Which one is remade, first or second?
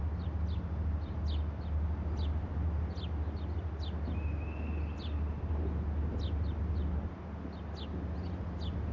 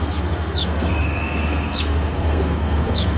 second